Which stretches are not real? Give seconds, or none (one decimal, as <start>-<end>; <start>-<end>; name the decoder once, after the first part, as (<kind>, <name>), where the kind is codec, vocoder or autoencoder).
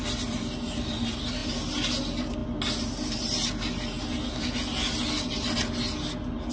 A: none